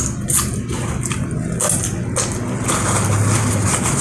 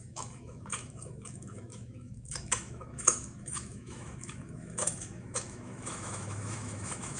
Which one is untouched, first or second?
first